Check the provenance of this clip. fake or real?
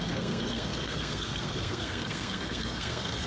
fake